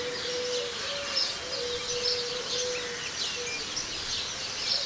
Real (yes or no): yes